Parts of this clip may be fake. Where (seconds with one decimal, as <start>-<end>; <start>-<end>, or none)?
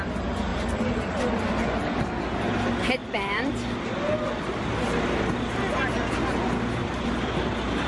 0.5-1.2; 3.0-3.5; 6.8-7.9